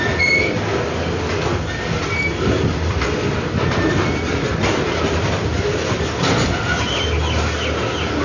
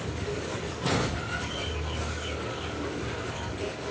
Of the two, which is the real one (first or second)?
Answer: first